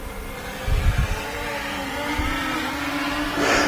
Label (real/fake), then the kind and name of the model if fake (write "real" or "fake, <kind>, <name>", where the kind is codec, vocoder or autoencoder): real